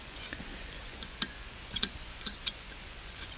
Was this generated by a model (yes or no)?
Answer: yes